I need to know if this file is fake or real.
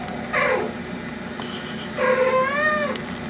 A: real